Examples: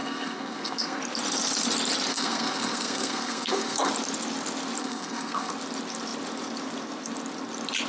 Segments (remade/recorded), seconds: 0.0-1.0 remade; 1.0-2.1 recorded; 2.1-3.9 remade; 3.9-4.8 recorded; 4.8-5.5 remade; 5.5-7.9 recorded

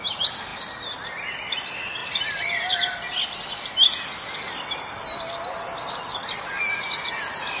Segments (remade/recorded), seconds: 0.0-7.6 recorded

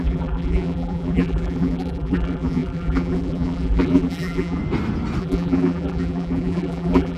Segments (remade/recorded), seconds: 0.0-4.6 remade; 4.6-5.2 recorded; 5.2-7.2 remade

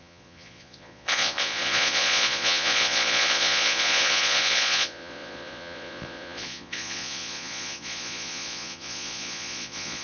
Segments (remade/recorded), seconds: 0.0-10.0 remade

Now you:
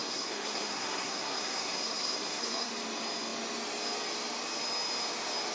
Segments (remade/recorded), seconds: 0.0-2.7 remade; 2.7-5.5 recorded

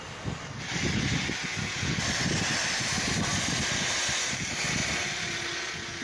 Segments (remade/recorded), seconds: 0.0-6.0 recorded